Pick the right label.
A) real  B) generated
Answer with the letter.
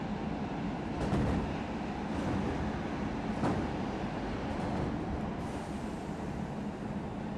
A